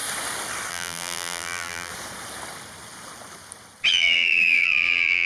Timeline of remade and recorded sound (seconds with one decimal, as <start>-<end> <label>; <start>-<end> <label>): 0.0-0.7 recorded; 0.7-1.9 remade; 1.9-3.9 recorded; 3.9-5.3 remade